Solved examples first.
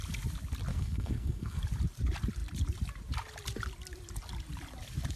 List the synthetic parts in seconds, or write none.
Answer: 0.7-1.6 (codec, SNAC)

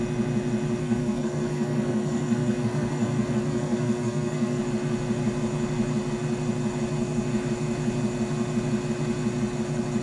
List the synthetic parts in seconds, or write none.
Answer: 0.8-4.6 (codec, SNAC)

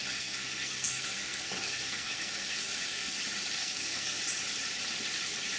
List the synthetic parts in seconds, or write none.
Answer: 0.0-3.2 (codec, SNAC); 3.6-4.2

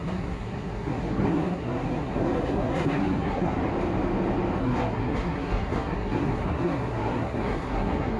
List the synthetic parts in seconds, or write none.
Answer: 0.0-3.6 (codec, SNAC); 4.6-8.2

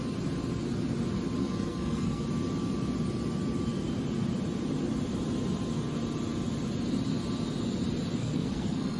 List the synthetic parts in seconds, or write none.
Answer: 1.4-2.2 (codec, SNAC); 8.2-9.0

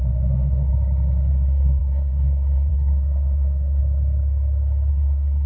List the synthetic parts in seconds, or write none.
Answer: 0.0-0.7 (codec, SNAC); 1.3-3.8; 4.9-5.5

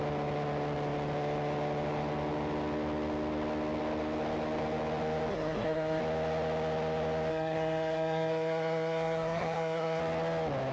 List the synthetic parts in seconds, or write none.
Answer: 5.3-6.0 (codec, SNAC); 7.3-10.0